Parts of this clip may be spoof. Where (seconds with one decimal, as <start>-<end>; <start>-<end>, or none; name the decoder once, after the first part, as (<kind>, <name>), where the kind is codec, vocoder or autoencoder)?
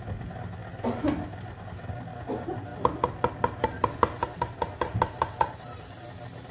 none